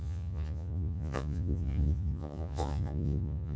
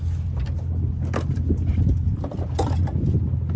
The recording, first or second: second